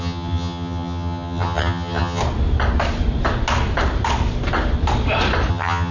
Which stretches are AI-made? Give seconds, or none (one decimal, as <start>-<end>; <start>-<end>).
0.0-2.2; 5.5-5.9